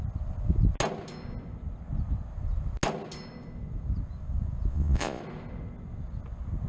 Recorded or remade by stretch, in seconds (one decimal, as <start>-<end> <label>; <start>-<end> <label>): 0.0-4.7 recorded; 4.7-5.2 remade; 5.2-6.7 recorded